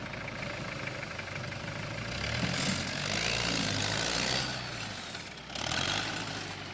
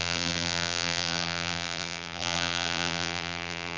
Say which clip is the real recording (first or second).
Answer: first